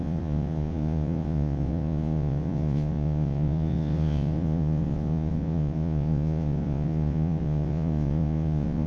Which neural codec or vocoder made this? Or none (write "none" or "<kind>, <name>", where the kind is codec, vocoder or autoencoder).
vocoder, Vocos